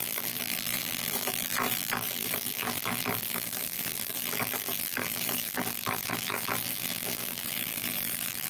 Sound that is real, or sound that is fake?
fake